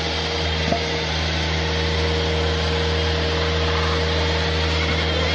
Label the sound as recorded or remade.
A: recorded